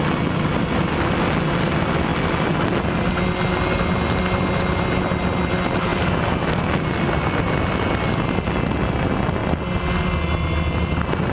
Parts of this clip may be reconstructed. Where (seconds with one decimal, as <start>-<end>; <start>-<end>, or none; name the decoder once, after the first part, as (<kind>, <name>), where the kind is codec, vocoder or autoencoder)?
none